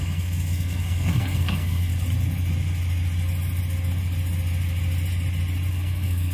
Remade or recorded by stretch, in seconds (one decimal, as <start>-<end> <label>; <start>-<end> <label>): 0.0-1.9 remade; 1.9-5.7 recorded; 5.7-6.3 remade